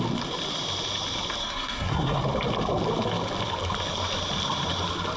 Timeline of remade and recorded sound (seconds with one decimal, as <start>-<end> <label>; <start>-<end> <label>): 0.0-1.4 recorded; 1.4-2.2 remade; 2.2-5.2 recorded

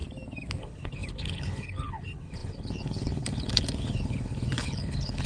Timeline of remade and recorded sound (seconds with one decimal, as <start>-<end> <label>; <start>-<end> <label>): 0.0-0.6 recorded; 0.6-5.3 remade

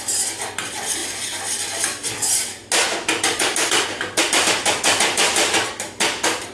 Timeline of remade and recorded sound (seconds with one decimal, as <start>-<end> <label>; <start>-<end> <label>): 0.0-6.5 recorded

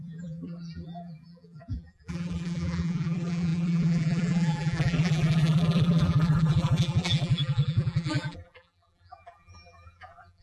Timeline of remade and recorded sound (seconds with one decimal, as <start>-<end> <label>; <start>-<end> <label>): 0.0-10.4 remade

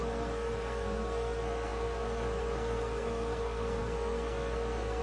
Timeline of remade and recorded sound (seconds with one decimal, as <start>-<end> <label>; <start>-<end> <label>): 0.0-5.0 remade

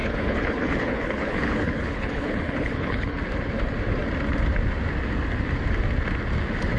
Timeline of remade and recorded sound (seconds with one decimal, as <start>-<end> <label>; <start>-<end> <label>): 0.0-3.2 remade; 3.2-6.8 recorded

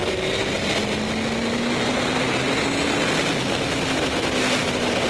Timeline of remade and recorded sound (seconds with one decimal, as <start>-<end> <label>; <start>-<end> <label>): 0.0-5.1 recorded